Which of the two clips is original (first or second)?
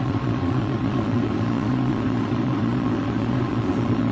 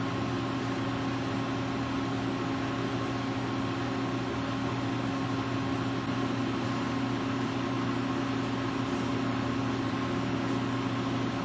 second